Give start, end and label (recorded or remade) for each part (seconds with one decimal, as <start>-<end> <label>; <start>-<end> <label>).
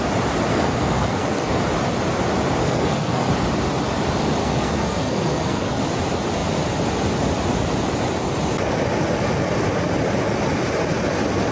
0.0-0.5 recorded; 0.5-1.6 remade; 1.6-2.6 recorded; 2.6-3.3 remade; 3.3-4.4 recorded; 4.4-5.8 remade; 5.8-11.5 recorded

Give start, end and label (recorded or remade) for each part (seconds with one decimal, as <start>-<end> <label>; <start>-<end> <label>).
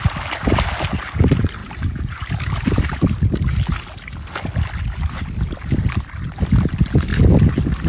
0.0-7.9 recorded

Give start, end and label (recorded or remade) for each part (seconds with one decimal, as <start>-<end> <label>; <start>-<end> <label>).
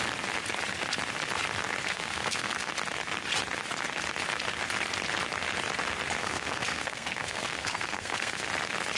0.0-1.8 recorded; 1.8-2.7 remade; 2.7-6.2 recorded; 6.2-8.5 remade; 8.5-9.0 recorded